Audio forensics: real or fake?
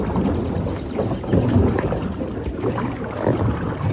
real